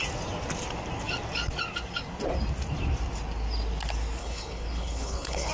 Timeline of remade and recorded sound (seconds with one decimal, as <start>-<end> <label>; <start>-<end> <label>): 0.0-4.2 recorded; 4.2-5.5 remade